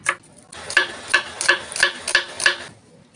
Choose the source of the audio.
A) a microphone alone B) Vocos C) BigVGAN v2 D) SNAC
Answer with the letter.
A